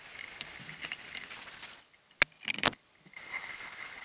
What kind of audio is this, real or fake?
real